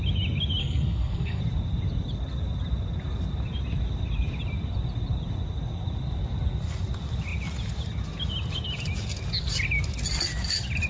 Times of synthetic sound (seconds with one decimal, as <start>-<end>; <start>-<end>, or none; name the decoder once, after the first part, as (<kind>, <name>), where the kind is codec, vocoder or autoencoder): 0.6-1.4 (codec, SNAC)